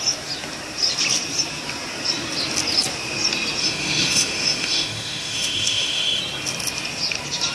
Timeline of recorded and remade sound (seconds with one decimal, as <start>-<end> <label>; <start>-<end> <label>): 0.0-3.6 recorded; 3.6-6.2 remade; 6.2-7.5 recorded